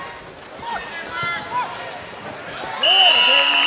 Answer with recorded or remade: recorded